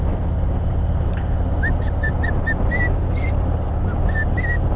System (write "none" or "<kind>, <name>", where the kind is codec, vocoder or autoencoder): none